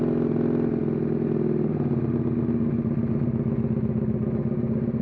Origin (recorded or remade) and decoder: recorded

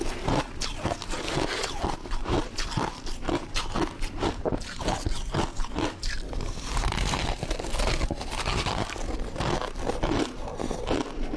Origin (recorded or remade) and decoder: remade, vocoder, BigVGAN v2